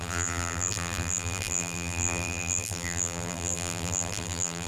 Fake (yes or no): yes